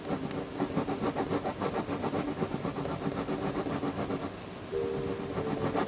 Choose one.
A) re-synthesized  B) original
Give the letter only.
B